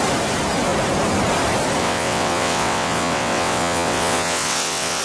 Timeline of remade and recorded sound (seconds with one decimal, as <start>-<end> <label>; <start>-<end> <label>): 0.0-1.8 recorded; 1.8-5.0 remade